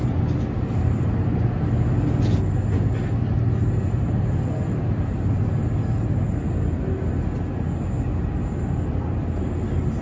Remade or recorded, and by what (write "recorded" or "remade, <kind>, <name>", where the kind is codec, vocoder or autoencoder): recorded